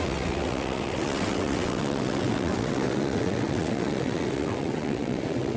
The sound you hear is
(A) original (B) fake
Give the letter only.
B